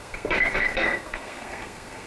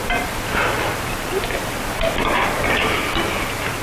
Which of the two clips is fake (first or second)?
first